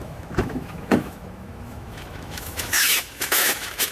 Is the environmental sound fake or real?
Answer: fake